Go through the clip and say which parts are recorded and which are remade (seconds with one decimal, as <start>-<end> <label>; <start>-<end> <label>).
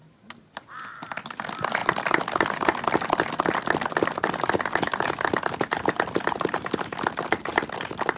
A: 0.0-8.2 recorded